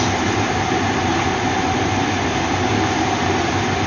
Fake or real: fake